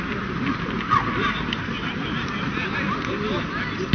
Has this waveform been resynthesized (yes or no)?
no